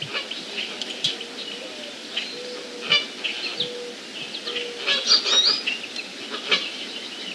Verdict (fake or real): real